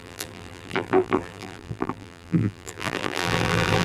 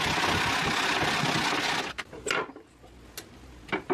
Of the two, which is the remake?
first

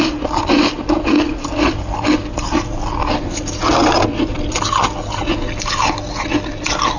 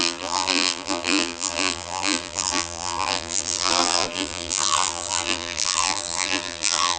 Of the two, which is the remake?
second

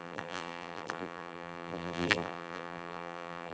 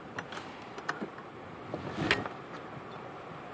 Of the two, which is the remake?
first